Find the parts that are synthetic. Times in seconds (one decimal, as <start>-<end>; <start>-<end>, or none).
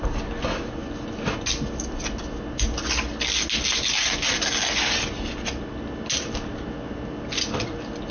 none